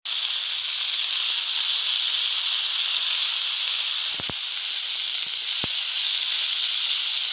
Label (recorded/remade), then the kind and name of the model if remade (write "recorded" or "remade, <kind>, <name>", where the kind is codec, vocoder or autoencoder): recorded